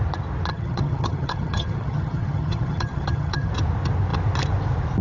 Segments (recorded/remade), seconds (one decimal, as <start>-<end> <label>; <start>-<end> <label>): 0.0-0.5 recorded; 0.5-3.5 remade; 3.5-5.0 recorded